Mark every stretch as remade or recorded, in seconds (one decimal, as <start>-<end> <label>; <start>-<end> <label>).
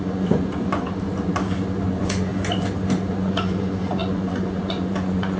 0.0-0.5 remade; 0.5-1.9 recorded; 1.9-2.3 remade; 2.3-3.1 recorded; 3.1-5.4 remade